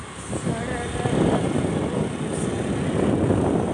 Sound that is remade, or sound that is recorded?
recorded